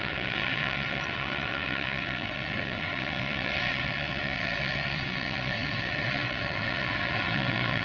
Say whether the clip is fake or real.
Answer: fake